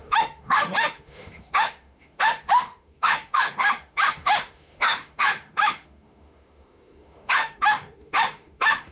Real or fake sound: fake